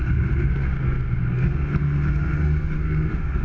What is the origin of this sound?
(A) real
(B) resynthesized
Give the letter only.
B